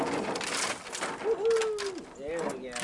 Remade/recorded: recorded